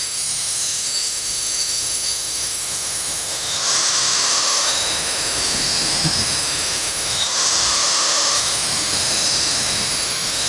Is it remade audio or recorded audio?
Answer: remade